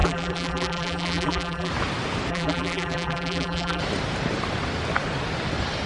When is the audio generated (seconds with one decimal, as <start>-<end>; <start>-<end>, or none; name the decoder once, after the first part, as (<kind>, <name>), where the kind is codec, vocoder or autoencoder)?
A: 0.0-1.7 (vocoder, BigVGAN v2); 2.3-3.8